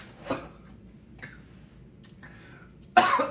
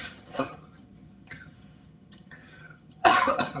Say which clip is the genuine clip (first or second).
first